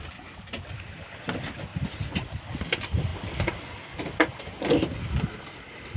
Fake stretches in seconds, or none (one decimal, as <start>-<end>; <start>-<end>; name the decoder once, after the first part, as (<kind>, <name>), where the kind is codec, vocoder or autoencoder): 1.7-2.4 (vocoder, BigVGAN v2)